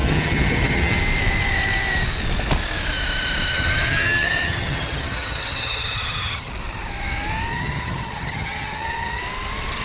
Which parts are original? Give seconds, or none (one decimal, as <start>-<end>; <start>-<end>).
1.0-3.5; 6.5-7.5; 9.2-9.8